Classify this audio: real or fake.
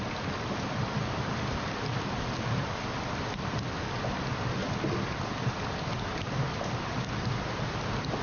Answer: real